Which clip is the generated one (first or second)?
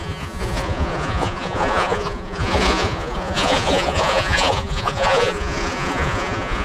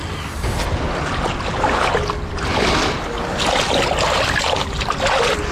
first